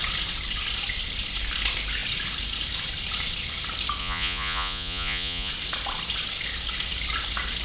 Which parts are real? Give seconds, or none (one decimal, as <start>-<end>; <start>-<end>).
0.0-4.0; 5.5-7.6